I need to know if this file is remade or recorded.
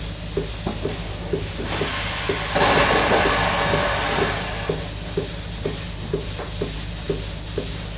recorded